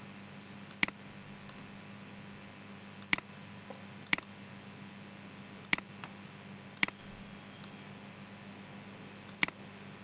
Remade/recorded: recorded